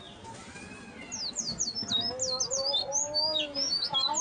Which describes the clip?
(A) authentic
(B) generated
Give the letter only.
A